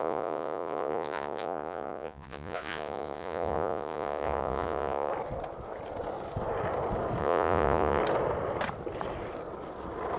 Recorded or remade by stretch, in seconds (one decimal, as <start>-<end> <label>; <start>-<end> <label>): 0.0-5.1 remade; 5.1-7.2 recorded; 7.2-8.0 remade; 8.0-10.2 recorded